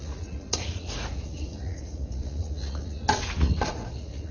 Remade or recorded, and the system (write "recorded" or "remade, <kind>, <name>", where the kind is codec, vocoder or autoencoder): remade, vocoder, Vocos